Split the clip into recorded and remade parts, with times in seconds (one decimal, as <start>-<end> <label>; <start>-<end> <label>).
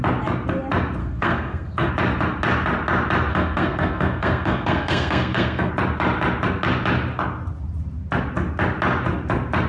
0.0-1.0 recorded; 1.0-1.9 remade; 1.9-3.3 recorded; 3.3-5.7 remade; 5.7-9.7 recorded